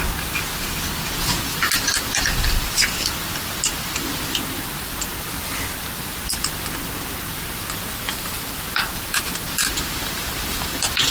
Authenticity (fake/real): fake